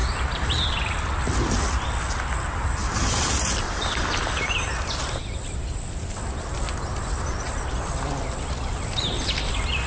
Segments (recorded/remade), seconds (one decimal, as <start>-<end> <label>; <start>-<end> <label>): 0.0-2.8 recorded; 2.8-4.0 remade; 4.0-9.9 recorded